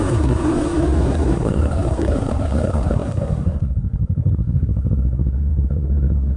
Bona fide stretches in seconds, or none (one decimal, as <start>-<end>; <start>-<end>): none